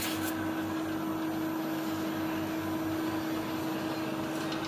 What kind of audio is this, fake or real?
real